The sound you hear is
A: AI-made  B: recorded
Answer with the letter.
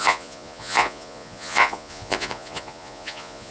A